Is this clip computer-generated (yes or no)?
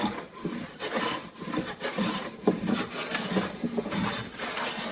no